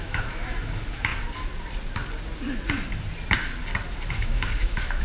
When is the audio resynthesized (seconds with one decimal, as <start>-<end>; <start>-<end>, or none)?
0.0-1.1; 4.1-5.0